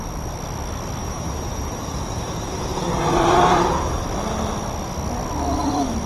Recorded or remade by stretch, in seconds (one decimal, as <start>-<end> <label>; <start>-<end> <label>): 0.0-1.0 recorded; 1.0-4.0 remade; 4.0-6.1 recorded